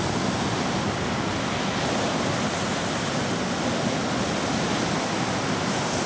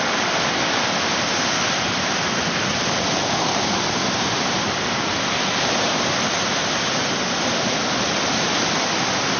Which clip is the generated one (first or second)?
second